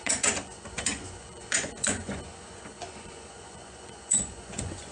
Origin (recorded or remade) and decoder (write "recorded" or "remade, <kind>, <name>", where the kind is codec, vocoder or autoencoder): remade, vocoder, Vocos